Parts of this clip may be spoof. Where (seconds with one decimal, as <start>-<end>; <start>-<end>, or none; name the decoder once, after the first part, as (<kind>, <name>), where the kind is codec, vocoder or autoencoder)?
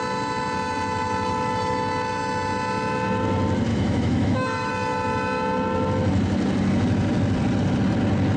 3.7-4.7 (autoencoder, DAC-VAE)